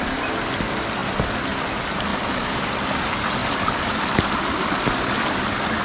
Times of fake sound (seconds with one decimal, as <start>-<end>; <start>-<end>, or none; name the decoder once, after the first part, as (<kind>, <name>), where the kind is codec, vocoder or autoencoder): 2.1-2.6 (vocoder, BigVGAN v2); 3.4-5.8